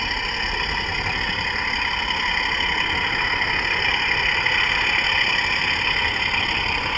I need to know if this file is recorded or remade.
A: recorded